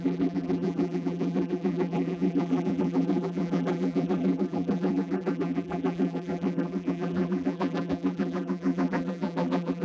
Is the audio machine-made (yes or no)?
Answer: yes